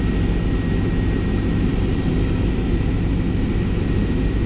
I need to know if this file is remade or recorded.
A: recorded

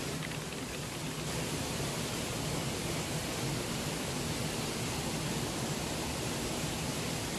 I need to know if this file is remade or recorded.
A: recorded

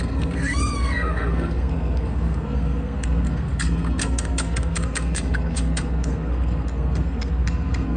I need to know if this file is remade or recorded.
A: remade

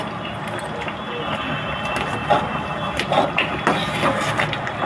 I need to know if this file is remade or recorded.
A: recorded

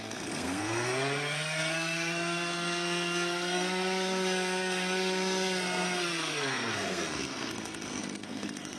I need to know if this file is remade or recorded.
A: remade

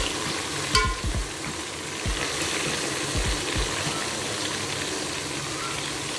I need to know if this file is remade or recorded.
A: recorded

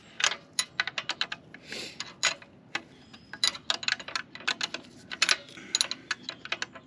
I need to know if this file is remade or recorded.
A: recorded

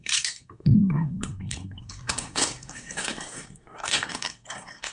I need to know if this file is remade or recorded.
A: remade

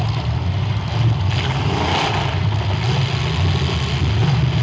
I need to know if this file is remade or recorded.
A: recorded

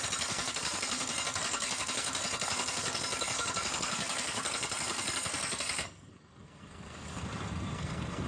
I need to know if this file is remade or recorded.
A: remade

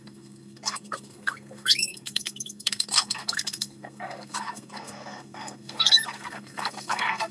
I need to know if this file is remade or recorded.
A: remade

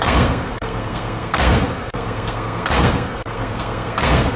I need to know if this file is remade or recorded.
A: remade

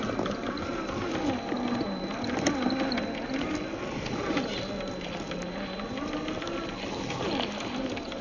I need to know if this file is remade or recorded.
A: recorded